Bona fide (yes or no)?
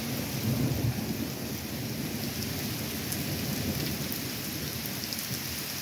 yes